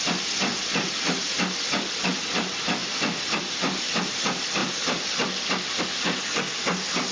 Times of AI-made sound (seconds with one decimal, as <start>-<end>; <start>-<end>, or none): 0.5-1.1; 2.8-4.1; 4.6-5.8